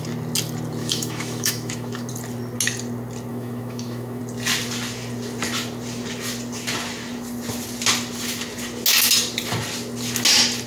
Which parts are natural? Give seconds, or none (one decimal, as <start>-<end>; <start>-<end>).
0.0-0.8; 2.1-3.3; 4.2-10.7